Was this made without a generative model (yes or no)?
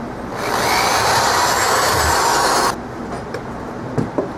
yes